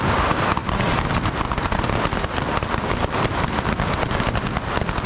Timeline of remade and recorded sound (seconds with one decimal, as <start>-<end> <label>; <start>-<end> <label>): 0.0-5.1 recorded